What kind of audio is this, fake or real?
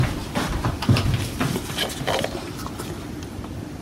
real